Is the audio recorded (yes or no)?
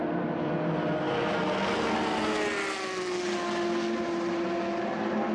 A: yes